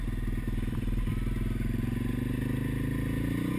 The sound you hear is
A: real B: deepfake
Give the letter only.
A